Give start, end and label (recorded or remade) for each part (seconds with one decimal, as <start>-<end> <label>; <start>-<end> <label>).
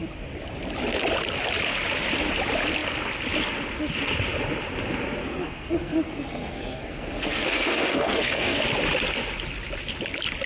0.0-5.2 recorded; 5.2-8.6 remade; 8.6-10.5 recorded